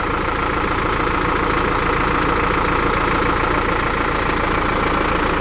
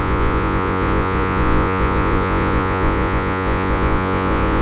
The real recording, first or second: first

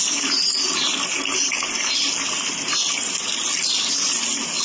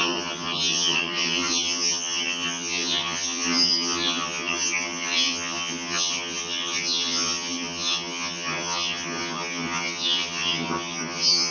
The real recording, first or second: first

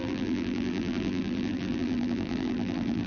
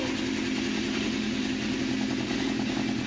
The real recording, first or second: second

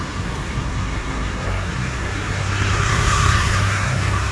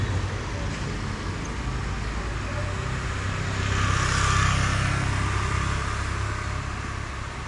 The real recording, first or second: second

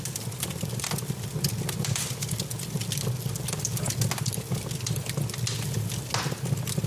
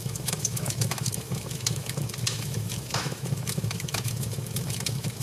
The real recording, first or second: first